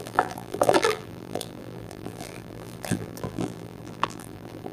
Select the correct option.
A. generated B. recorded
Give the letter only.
A